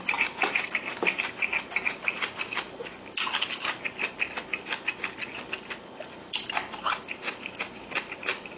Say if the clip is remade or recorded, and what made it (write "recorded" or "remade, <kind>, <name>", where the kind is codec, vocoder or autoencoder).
recorded